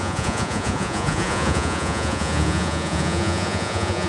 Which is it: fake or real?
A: fake